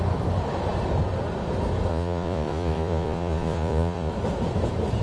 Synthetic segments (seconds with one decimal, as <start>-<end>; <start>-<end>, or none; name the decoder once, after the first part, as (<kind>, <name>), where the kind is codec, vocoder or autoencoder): 1.9-4.1 (vocoder, Vocos)